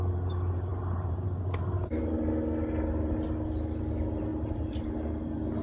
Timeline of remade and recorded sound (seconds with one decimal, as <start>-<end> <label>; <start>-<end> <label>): 0.0-0.7 recorded; 0.7-2.3 remade; 2.3-4.3 recorded; 4.3-4.9 remade; 4.9-5.6 recorded